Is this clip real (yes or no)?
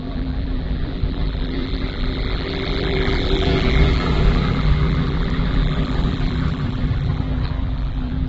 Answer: no